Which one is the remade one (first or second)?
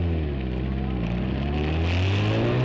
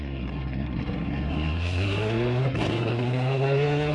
second